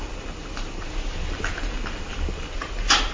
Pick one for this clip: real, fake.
real